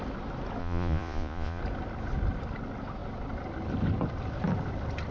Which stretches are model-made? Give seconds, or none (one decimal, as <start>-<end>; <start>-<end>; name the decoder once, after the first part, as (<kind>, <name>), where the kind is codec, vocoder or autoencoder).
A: 0.6-1.6 (vocoder, Vocos)